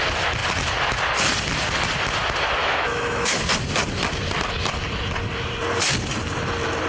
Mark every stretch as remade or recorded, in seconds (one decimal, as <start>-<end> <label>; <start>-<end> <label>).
0.0-2.6 recorded; 2.6-3.5 remade; 3.5-6.9 recorded